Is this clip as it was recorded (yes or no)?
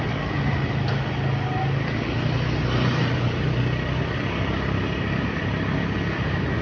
yes